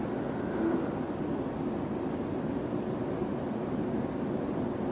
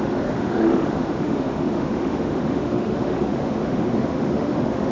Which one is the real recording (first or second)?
first